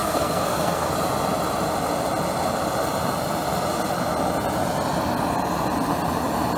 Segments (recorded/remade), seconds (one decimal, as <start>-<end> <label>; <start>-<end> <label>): 0.0-0.9 remade; 0.9-6.6 recorded